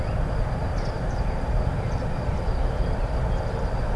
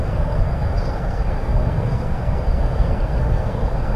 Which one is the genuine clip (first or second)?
first